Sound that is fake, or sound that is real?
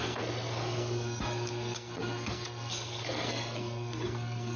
fake